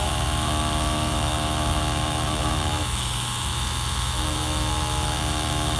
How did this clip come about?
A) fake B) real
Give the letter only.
A